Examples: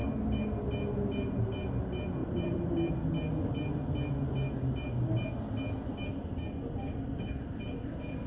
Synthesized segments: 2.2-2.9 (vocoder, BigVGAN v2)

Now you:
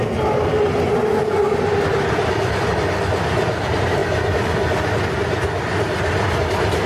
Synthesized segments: none

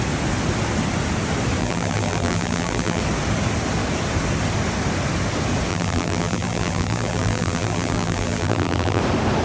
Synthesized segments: 1.6-3.0 (vocoder, BigVGAN v2); 5.7-9.0

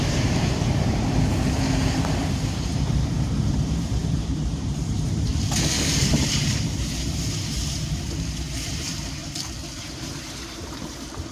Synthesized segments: 0.0-5.3 (vocoder, BigVGAN v2); 5.8-9.2; 9.8-11.3